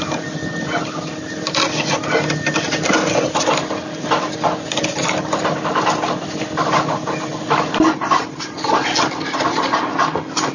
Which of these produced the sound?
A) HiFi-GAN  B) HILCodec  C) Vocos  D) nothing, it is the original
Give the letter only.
D